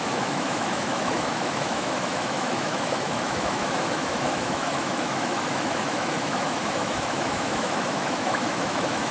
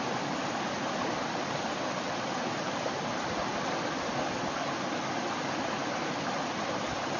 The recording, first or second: second